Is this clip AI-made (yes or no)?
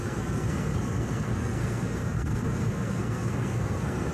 yes